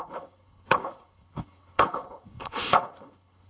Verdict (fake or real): fake